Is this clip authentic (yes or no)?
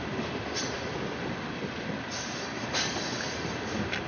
no